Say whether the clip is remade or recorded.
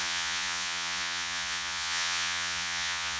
remade